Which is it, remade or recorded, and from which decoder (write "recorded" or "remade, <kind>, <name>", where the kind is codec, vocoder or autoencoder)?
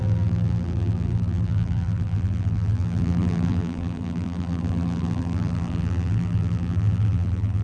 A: remade, vocoder, BigVGAN v2